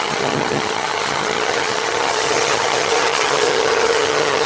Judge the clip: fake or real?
fake